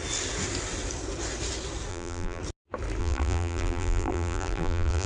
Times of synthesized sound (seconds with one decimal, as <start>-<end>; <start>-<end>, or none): 1.9-2.4; 3.0-5.1